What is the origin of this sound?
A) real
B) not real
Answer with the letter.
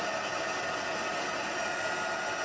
A